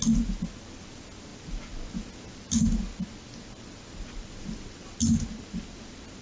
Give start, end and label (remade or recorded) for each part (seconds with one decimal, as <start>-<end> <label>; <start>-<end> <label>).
0.0-6.2 recorded

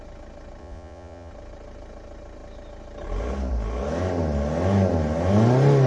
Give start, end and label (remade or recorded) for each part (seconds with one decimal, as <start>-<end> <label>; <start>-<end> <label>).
0.0-0.6 recorded; 0.6-1.3 remade; 1.3-5.9 recorded

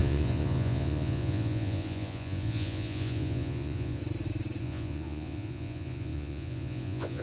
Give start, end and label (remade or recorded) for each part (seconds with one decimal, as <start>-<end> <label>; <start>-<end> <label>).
0.0-4.0 remade; 4.0-4.6 recorded; 4.6-7.2 remade